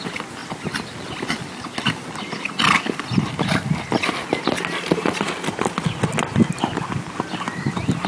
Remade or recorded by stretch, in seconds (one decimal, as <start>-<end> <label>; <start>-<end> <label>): 0.0-0.4 recorded; 0.4-3.7 remade; 3.7-8.1 recorded